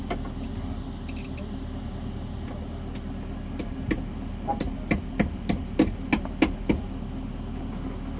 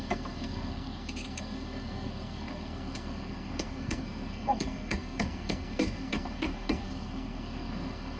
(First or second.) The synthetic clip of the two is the second